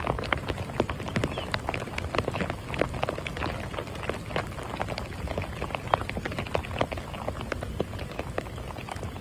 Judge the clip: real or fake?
fake